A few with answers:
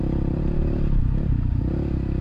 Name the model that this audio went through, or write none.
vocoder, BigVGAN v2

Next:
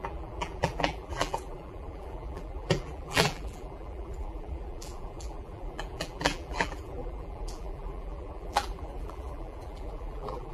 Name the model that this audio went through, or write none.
vocoder, BigVGAN v2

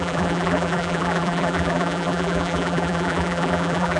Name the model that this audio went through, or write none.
vocoder, BigVGAN v2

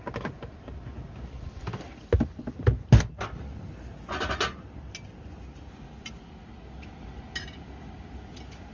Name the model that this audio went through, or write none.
none